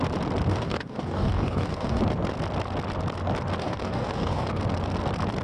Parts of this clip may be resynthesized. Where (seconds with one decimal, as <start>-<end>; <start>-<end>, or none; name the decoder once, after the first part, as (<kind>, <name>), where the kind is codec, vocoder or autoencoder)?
0.5-2.0 (codec, DAC); 3.6-4.6